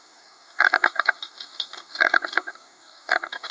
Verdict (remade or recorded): remade